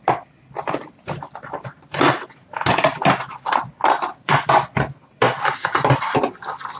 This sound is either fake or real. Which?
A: fake